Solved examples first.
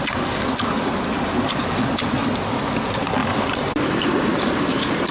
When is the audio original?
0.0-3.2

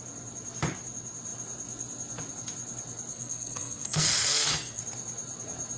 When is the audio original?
0.0-3.1; 4.8-5.8

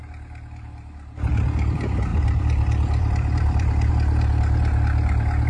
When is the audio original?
0.0-2.1; 3.9-5.5

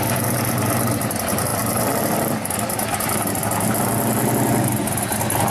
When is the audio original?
0.0-5.5

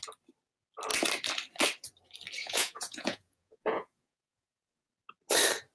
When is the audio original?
0.0-2.4; 4.9-5.7

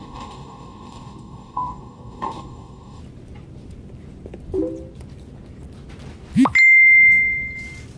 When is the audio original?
3.0-8.0

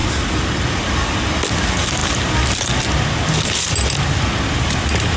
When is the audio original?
0.0-5.2

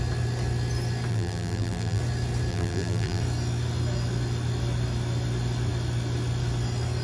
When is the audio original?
0.0-1.1; 2.0-2.5; 3.2-7.0